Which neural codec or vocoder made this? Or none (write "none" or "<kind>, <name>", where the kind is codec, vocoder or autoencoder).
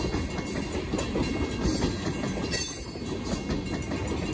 none